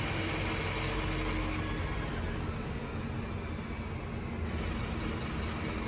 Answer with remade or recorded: recorded